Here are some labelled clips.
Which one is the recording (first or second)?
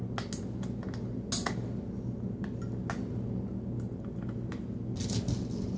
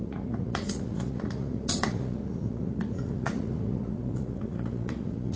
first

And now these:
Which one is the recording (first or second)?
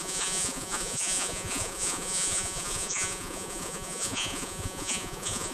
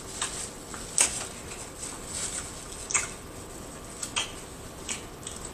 second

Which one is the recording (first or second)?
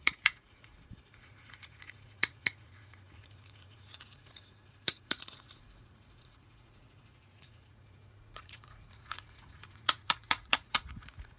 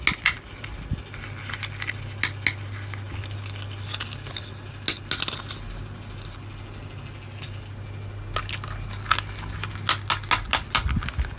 second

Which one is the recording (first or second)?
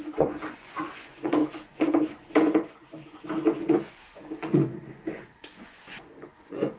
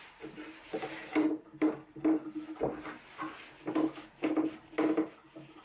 second